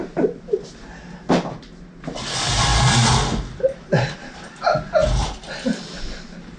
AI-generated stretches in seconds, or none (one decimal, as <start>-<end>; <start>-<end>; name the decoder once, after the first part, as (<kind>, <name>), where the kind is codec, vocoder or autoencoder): none